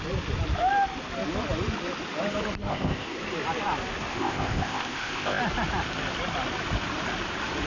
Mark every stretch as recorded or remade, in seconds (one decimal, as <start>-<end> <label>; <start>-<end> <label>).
0.0-2.7 recorded; 2.7-3.2 remade; 3.2-4.1 recorded; 4.1-5.4 remade; 5.4-7.7 recorded